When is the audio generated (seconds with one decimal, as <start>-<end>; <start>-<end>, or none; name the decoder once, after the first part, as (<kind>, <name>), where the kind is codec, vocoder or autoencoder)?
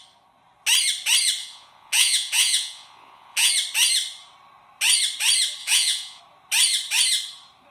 1.4-3.5 (vocoder, Vocos); 5.6-6.2